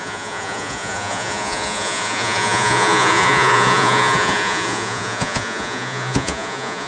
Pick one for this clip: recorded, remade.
remade